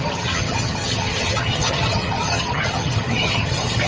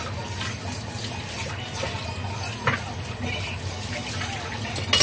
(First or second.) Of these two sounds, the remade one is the first